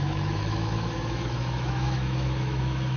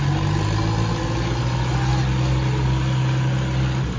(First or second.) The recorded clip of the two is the second